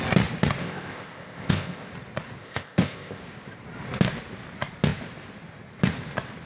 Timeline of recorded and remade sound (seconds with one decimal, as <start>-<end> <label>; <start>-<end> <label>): 0.0-0.6 recorded; 0.6-1.9 remade; 1.9-2.4 recorded; 2.4-3.2 remade; 3.2-6.5 recorded